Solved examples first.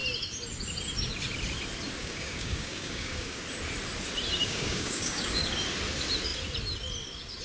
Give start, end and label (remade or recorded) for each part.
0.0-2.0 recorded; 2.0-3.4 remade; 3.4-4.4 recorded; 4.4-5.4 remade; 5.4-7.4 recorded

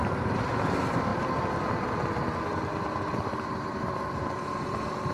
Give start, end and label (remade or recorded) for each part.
0.0-5.1 recorded

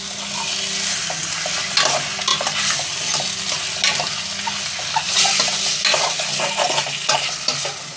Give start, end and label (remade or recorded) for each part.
0.0-2.3 recorded; 2.3-3.3 remade; 3.3-8.0 recorded

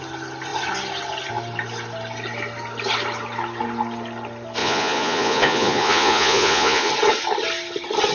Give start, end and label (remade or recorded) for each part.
0.0-4.6 recorded; 4.6-6.9 remade; 6.9-8.1 recorded

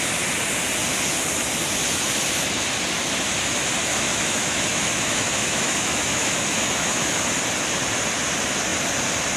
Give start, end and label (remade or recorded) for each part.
0.0-3.9 recorded; 3.9-7.3 remade; 7.3-9.4 recorded